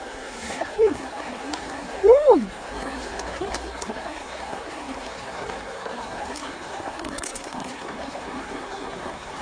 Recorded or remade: remade